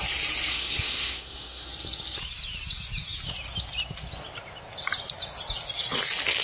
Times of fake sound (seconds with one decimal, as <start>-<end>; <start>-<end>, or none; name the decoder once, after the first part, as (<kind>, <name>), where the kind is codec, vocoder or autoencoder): 0.5-1.7 (codec, SNAC)